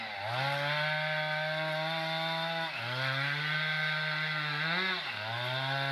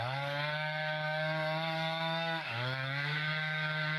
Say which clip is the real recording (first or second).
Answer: first